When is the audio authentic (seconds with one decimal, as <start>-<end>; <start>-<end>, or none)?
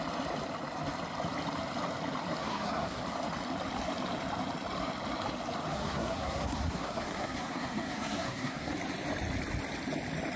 0.0-2.4; 3.0-5.7; 8.7-10.4